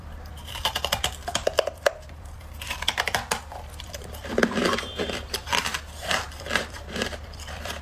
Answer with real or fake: fake